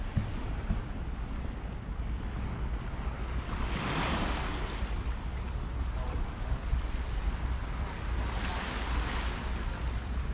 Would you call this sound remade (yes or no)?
no